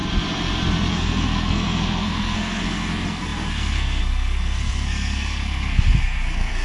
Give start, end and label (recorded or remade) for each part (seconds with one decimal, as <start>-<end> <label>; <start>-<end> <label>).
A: 0.0-0.9 recorded; 0.9-6.6 remade